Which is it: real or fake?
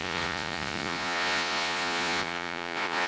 fake